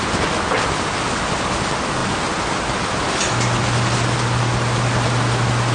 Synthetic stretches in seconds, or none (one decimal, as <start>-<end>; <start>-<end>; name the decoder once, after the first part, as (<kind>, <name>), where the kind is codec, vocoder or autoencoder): none